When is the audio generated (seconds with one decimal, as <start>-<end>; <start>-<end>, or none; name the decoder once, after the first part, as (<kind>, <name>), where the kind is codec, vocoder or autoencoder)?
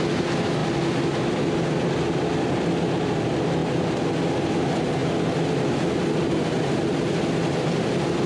none